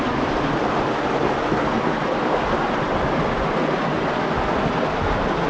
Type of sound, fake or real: real